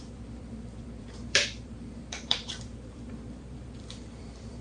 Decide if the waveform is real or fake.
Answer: fake